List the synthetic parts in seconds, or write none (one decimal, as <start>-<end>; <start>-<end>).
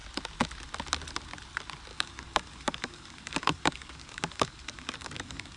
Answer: 1.9-5.6